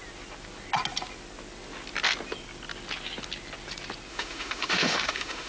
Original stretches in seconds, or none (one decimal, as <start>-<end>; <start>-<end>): 0.0-4.1